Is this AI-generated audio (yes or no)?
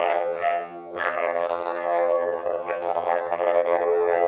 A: yes